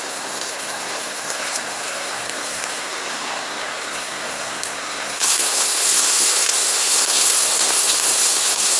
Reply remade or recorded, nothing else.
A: remade